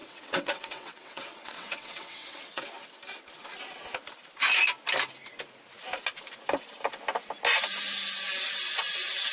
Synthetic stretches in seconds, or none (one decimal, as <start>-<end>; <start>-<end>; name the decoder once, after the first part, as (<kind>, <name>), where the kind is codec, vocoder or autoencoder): 0.0-2.6 (vocoder, WaveNeXt)